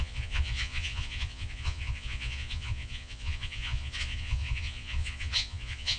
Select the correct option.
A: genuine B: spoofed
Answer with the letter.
B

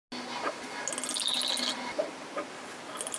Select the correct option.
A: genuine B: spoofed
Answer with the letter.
A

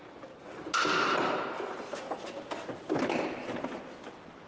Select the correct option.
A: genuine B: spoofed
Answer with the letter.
A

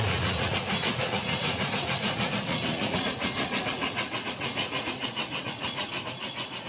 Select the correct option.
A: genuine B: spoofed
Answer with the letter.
B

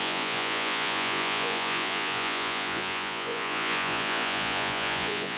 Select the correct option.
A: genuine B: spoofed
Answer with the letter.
B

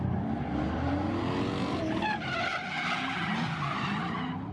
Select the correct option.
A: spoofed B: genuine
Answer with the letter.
B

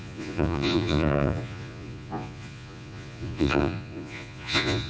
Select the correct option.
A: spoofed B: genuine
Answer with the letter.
A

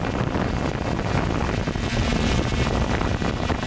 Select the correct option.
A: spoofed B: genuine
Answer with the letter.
B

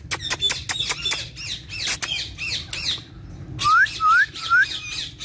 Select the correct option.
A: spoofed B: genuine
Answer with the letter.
B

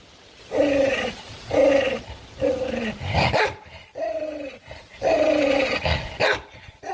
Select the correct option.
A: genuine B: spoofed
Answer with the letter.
A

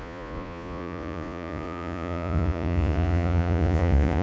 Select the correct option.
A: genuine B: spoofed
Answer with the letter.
B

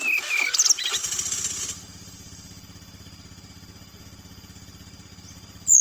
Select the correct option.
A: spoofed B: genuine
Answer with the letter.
B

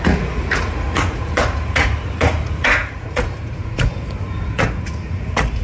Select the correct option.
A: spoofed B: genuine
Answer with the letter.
A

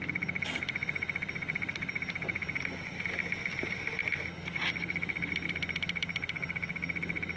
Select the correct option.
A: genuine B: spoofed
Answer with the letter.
A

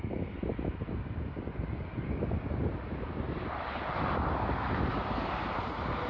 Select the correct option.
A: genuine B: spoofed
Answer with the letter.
A